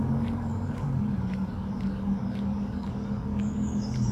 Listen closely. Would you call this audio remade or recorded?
remade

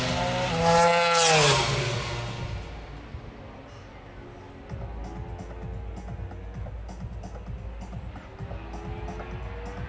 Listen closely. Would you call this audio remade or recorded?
recorded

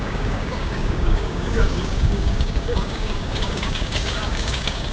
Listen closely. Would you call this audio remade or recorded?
remade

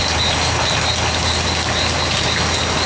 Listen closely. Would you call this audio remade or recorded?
recorded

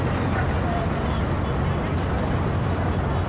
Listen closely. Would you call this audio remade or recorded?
recorded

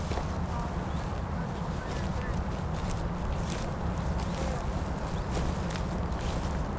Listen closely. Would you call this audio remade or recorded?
recorded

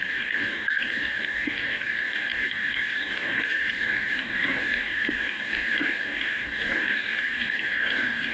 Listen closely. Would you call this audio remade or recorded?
remade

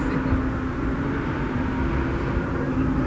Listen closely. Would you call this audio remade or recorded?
recorded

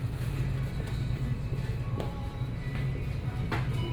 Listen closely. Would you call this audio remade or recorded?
recorded